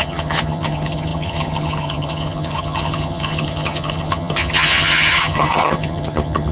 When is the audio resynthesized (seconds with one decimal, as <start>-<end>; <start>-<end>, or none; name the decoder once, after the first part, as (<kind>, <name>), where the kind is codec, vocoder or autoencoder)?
0.0-6.5 (vocoder, HiFi-GAN)